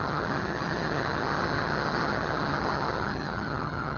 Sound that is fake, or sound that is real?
fake